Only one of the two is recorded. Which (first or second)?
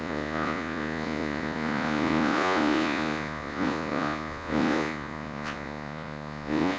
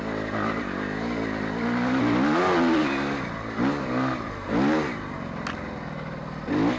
second